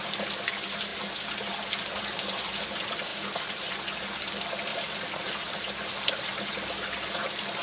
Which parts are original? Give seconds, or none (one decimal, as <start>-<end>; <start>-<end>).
0.0-7.6